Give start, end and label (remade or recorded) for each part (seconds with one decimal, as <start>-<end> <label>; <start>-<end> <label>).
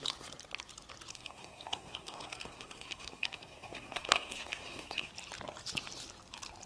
0.0-1.1 recorded; 1.1-5.1 remade; 5.1-6.7 recorded